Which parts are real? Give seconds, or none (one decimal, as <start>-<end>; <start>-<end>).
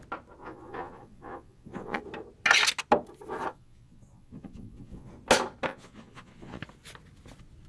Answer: 0.0-0.4; 2.0-3.5; 5.1-5.7; 6.6-7.7